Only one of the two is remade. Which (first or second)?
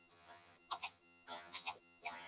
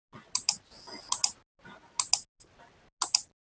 first